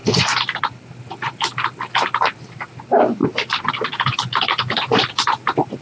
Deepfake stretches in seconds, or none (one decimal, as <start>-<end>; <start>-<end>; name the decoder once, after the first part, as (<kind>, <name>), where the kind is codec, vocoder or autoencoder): none

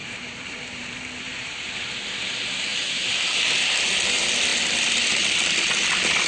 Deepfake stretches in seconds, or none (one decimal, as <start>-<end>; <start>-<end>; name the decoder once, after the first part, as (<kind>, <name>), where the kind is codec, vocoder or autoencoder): 0.0-1.9 (vocoder, BigVGAN v2); 2.7-3.4

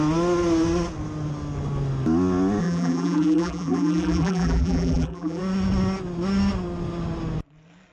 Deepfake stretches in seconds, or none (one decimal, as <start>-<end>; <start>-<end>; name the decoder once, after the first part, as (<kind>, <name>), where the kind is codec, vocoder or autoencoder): 2.6-5.4 (vocoder, BigVGAN v2)

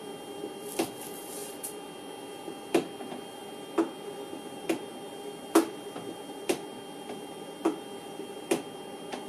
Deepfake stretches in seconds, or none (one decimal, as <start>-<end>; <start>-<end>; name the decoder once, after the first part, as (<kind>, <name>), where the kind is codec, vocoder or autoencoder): 0.0-9.3 (vocoder, BigVGAN v2)